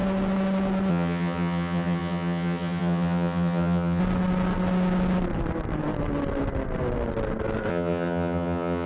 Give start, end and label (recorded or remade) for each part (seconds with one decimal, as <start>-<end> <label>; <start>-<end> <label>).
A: 0.0-0.9 recorded; 0.9-4.0 remade; 4.0-7.7 recorded; 7.7-8.9 remade

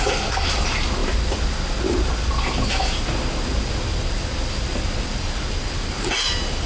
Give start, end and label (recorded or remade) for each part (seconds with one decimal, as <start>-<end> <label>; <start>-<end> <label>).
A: 0.0-6.7 recorded

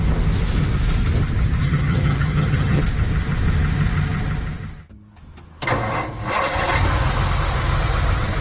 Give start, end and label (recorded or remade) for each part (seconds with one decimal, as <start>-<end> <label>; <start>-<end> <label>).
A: 0.0-1.6 recorded; 1.6-2.8 remade; 2.8-8.4 recorded